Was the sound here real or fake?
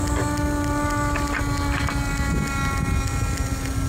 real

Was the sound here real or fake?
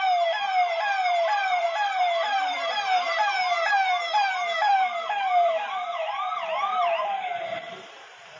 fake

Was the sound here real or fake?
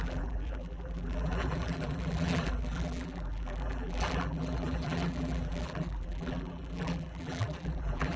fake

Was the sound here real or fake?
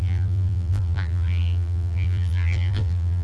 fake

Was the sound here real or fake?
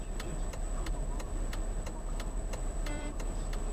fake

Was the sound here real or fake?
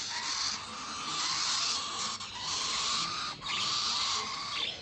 real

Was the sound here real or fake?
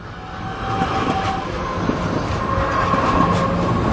real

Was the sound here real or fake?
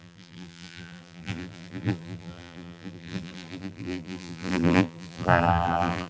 fake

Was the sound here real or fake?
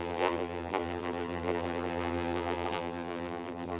fake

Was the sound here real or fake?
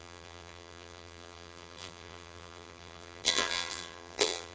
fake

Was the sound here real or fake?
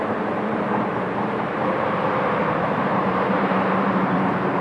fake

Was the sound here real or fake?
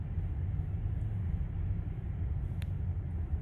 real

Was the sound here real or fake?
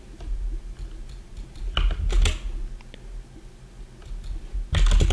real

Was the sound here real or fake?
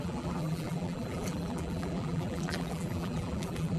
fake